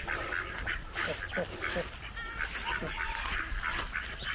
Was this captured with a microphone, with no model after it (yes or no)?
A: yes